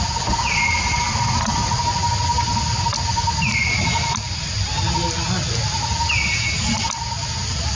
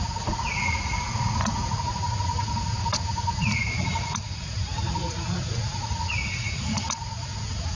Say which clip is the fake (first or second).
second